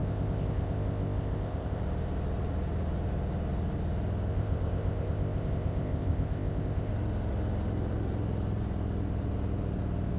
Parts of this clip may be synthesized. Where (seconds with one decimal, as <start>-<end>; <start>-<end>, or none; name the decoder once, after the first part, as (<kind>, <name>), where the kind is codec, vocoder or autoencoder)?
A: 0.0-1.8 (codec, ZipCodec); 4.3-6.9